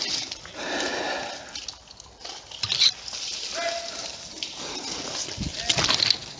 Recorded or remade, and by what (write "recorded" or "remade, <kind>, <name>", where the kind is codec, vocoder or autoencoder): recorded